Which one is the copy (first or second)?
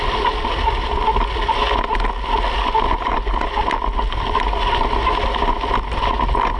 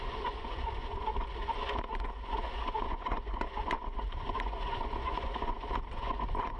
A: second